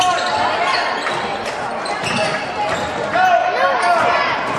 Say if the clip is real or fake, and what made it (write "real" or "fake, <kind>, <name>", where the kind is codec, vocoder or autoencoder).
real